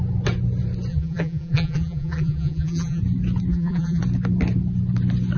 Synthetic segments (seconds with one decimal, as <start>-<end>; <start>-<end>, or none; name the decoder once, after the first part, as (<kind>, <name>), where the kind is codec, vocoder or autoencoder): 0.9-3.0 (vocoder, BigVGAN v2); 3.5-4.0